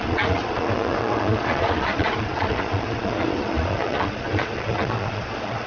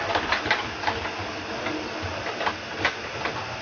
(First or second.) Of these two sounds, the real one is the second